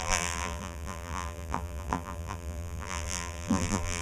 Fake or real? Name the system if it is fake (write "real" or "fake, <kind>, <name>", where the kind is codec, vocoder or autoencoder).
fake, vocoder, BigVGAN v2